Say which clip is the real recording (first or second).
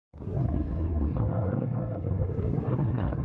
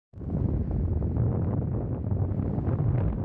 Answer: second